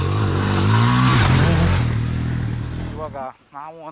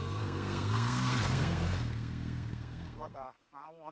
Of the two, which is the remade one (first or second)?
second